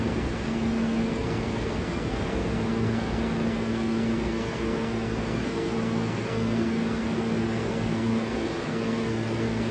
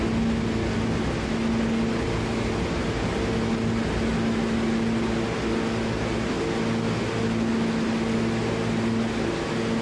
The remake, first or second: first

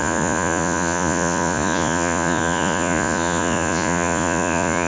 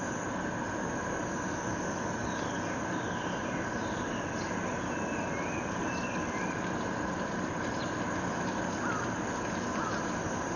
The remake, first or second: first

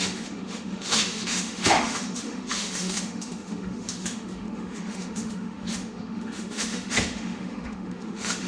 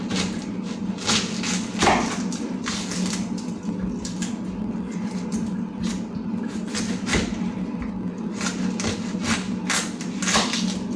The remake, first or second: first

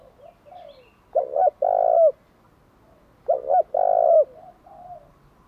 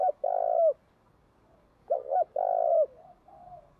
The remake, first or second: second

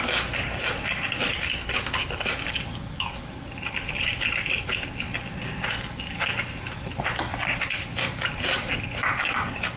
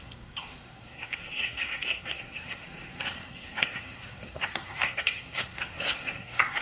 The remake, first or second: second